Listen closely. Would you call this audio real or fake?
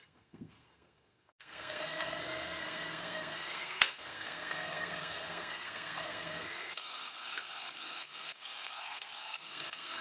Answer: fake